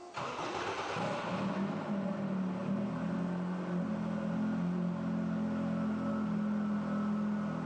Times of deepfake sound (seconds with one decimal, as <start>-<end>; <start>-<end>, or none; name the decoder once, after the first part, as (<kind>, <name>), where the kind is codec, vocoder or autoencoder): none